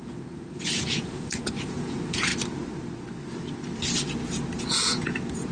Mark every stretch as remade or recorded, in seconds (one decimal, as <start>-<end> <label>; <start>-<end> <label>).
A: 0.0-2.3 remade; 2.3-4.6 recorded; 4.6-5.5 remade